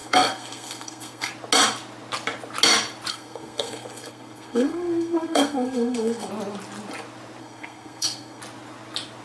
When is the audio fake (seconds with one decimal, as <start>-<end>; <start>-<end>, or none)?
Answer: 0.0-1.3; 3.1-6.3; 7.4-8.4